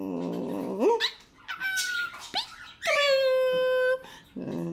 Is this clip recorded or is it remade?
recorded